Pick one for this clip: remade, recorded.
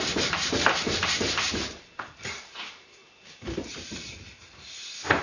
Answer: remade